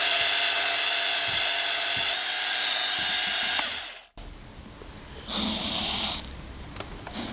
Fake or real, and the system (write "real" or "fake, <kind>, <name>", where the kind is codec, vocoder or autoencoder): real